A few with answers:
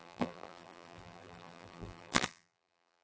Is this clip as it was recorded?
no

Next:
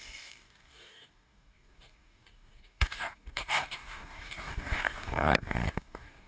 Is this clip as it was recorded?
no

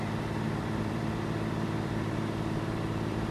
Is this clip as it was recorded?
no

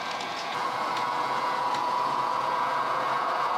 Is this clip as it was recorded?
no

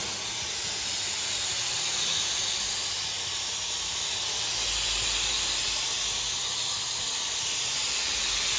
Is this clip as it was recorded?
yes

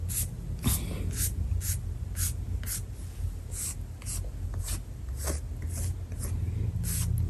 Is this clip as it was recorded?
yes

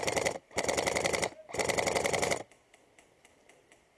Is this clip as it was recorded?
yes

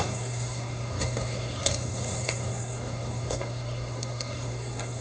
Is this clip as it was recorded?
no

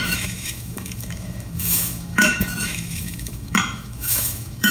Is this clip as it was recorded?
no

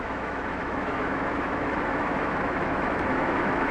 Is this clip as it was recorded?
no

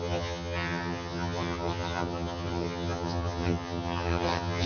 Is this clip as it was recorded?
no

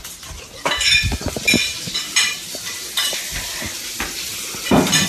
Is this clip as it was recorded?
yes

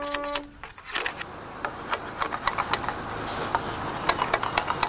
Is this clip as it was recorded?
yes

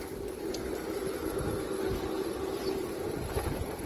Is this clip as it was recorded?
yes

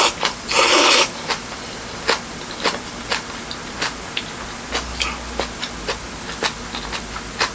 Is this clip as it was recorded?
yes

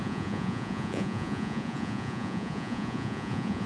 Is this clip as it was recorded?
no